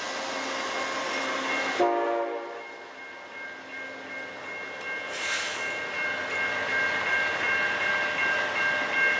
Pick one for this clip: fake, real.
real